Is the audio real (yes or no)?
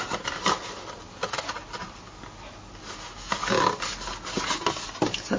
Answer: yes